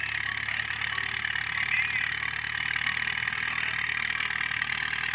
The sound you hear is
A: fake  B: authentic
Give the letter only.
B